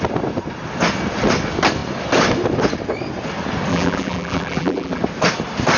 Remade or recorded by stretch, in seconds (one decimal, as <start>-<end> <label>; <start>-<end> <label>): 0.0-3.7 recorded; 3.7-5.0 remade; 5.0-5.8 recorded